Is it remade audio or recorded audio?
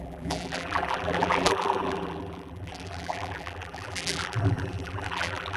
remade